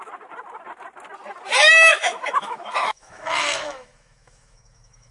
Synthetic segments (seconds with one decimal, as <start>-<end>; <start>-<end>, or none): 1.9-5.1